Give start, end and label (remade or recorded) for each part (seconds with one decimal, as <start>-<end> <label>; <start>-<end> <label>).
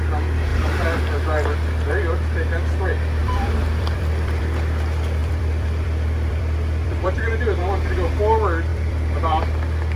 0.0-0.5 recorded; 0.5-1.0 remade; 1.0-3.2 recorded; 3.2-4.4 remade; 4.4-5.2 recorded; 5.2-7.2 remade; 7.2-8.7 recorded; 8.7-9.4 remade; 9.4-10.0 recorded